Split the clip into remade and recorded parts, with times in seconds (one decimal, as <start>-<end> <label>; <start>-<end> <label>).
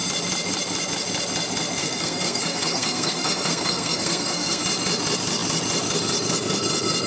0.0-1.8 recorded; 1.8-4.6 remade; 4.6-7.1 recorded